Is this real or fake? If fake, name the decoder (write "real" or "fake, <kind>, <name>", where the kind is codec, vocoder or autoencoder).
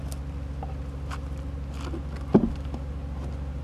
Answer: real